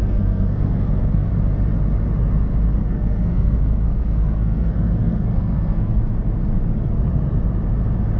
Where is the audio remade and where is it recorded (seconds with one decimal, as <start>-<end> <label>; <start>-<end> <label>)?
0.0-1.3 remade; 1.3-2.8 recorded; 2.8-6.0 remade; 6.0-8.2 recorded